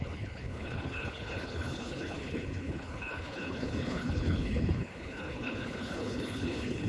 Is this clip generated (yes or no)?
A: yes